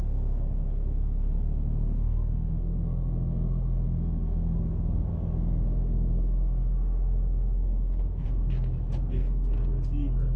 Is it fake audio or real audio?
fake